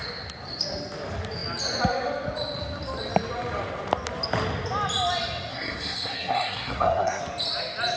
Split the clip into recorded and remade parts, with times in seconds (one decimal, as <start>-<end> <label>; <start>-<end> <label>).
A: 0.0-5.5 recorded; 5.5-7.2 remade; 7.2-8.0 recorded

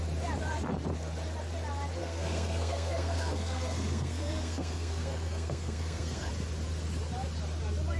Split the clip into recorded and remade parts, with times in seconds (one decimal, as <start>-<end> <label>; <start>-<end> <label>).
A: 0.0-2.0 recorded; 2.0-6.3 remade; 6.3-8.0 recorded

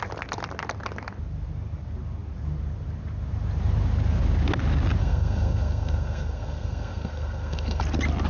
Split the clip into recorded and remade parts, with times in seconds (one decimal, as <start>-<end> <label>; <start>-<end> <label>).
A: 0.0-5.0 recorded; 5.0-7.8 remade; 7.8-8.3 recorded

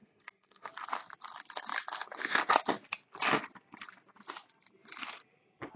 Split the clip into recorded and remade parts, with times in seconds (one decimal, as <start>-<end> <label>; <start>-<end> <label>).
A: 0.0-0.7 remade; 0.7-5.8 recorded